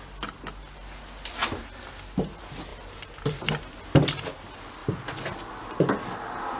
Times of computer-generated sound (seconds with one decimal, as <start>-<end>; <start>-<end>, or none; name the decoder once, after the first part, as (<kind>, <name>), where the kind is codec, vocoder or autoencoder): none

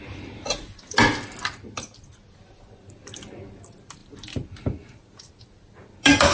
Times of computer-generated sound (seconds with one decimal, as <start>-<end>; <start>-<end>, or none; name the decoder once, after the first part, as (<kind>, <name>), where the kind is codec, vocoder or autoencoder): none

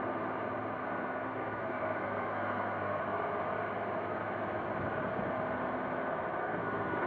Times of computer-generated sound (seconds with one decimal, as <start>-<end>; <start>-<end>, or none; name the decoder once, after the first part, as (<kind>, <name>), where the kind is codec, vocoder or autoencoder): 0.8-3.0 (codec, SNAC); 6.4-7.1